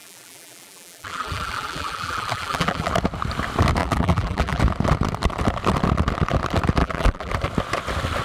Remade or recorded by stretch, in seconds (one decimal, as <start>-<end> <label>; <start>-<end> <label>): 0.0-2.9 remade; 2.9-3.8 recorded; 3.8-4.6 remade; 4.6-6.8 recorded; 6.8-7.3 remade; 7.3-8.2 recorded